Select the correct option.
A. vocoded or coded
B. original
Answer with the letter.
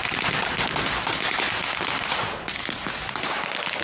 B